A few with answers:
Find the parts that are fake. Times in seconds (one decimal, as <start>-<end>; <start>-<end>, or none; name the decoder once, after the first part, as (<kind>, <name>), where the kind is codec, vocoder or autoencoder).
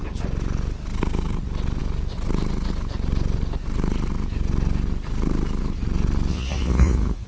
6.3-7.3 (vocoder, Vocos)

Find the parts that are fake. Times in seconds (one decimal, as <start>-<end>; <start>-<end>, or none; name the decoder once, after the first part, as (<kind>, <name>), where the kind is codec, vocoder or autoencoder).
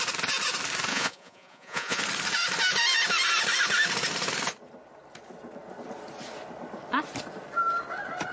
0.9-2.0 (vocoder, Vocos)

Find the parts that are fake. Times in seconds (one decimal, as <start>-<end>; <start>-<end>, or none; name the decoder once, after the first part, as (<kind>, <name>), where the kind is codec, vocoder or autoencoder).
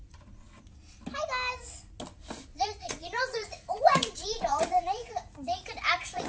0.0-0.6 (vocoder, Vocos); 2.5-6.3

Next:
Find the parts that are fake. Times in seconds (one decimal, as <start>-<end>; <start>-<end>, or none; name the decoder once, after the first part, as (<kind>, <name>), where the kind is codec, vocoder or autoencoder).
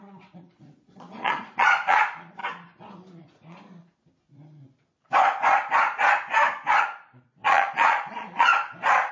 0.0-2.4 (vocoder, Vocos); 3.2-3.7; 6.8-8.5